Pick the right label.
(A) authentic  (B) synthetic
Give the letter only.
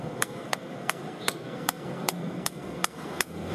B